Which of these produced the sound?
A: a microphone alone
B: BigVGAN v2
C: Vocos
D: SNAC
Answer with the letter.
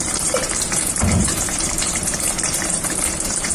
B